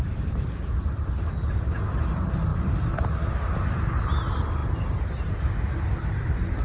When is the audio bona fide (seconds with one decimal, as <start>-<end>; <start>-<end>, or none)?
0.0-6.6